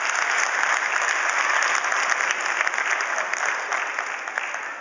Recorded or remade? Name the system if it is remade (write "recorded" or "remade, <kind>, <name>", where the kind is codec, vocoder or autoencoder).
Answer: recorded